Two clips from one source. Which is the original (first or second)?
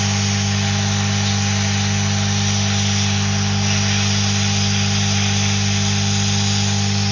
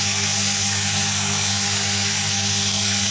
first